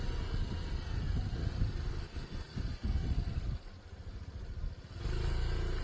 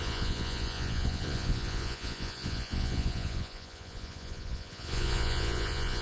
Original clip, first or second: first